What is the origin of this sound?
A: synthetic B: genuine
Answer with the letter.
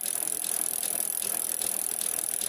B